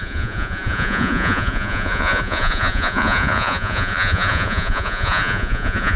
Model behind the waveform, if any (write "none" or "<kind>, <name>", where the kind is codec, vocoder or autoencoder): vocoder, Vocos